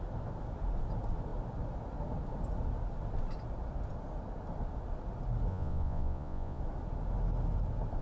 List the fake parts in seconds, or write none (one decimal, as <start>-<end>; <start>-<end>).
5.5-6.6